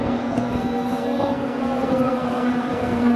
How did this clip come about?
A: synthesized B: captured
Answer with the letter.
A